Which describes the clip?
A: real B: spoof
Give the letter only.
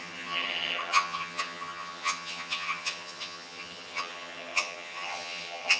B